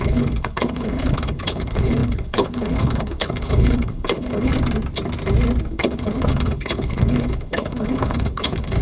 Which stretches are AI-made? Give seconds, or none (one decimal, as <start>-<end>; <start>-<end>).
0.0-4.5; 5.6-8.8